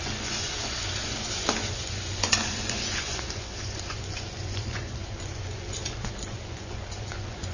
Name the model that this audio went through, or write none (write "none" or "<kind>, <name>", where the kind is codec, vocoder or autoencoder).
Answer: vocoder, Vocos